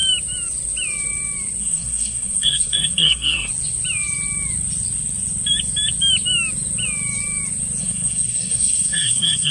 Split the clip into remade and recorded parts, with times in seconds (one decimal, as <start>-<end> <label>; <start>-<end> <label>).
0.0-1.6 recorded; 1.6-3.5 remade; 3.5-7.8 recorded; 7.8-9.5 remade